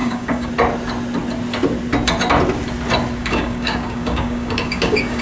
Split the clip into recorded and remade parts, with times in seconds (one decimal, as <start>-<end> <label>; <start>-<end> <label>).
0.0-0.5 remade; 0.5-3.2 recorded; 3.2-5.2 remade